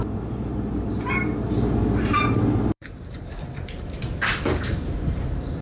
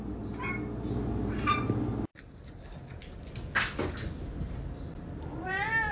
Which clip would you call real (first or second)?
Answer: second